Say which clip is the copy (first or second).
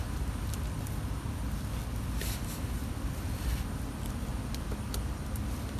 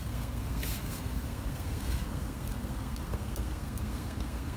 second